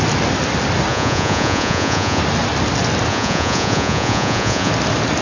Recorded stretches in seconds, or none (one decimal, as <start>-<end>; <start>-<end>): 0.0-0.9; 2.2-3.1; 4.7-5.2